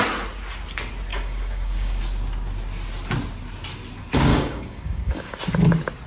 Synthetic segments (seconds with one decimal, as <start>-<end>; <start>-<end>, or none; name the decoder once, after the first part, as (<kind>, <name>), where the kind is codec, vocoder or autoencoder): 1.1-2.0 (codec, DAC); 4.3-5.4